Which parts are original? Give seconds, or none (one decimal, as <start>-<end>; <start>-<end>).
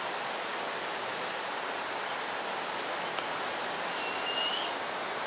0.0-5.3